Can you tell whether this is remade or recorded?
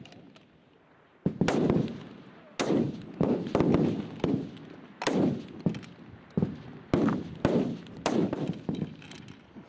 recorded